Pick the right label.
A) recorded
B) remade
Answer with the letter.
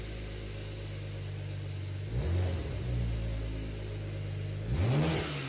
A